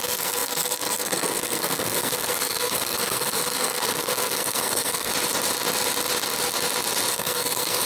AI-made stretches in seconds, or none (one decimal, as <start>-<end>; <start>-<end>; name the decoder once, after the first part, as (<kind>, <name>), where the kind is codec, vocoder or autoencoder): 0.0-5.1 (codec, SNAC); 7.1-7.9